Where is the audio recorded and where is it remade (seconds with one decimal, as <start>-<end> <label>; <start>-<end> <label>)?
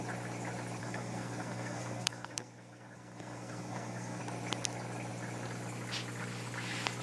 0.0-0.8 recorded; 0.8-4.2 remade; 4.2-7.0 recorded